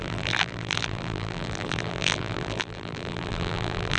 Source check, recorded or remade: remade